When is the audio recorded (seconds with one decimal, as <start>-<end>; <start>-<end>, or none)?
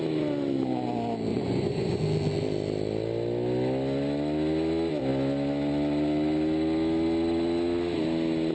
0.0-1.3; 2.0-8.5